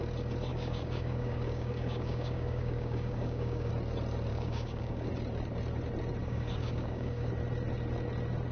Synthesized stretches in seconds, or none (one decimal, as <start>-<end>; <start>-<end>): 0.5-3.7; 4.3-5.1; 6.2-7.3